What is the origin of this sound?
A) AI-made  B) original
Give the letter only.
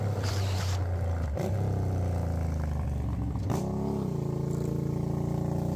B